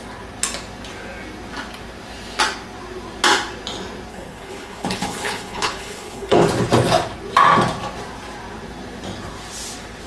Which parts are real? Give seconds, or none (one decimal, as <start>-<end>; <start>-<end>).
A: 0.0-4.1; 6.4-10.1